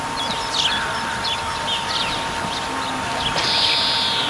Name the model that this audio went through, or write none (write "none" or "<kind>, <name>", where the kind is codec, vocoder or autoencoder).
none